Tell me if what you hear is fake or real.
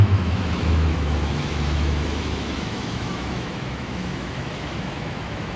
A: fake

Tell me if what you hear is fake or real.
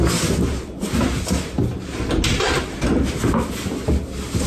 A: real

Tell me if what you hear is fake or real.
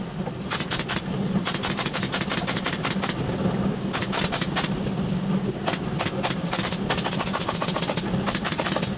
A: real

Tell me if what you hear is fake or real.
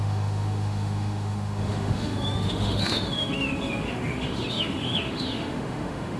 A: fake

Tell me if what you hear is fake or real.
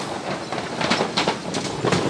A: real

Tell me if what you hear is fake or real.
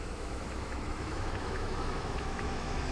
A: fake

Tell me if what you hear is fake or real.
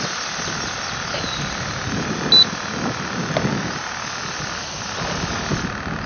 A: real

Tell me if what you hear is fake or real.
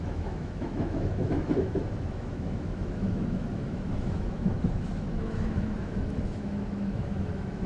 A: fake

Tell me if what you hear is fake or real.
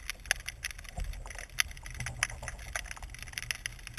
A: real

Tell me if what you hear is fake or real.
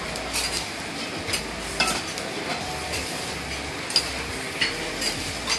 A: real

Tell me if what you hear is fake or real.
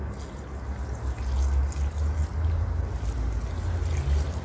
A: real